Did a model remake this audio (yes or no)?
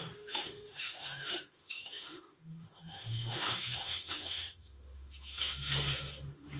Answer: yes